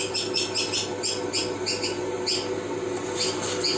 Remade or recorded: recorded